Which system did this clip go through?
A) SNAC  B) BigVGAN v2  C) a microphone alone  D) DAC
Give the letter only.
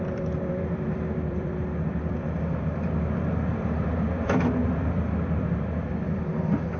B